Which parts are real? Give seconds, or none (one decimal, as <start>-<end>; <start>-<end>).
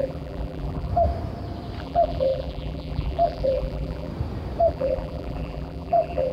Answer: 0.9-1.8; 4.1-4.7